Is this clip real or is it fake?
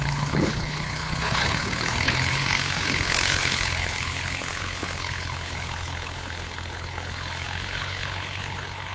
fake